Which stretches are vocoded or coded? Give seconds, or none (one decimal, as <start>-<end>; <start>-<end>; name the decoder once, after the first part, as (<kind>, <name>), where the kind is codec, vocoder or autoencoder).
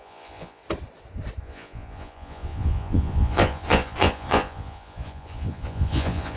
0.0-0.6 (vocoder, Vocos); 1.4-6.4